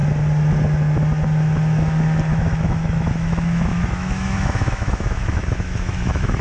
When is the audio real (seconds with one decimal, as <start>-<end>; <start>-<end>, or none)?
0.0-2.3